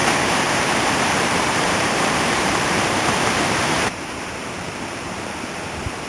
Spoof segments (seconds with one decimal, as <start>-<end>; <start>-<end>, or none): 0.0-6.1